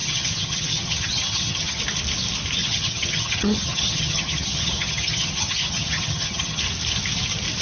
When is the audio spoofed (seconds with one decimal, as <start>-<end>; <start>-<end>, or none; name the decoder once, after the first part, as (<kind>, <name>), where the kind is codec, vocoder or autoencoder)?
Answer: 0.0-1.8 (vocoder, HiFi-GAN); 2.6-6.6